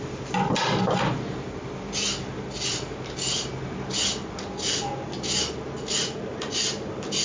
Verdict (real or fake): real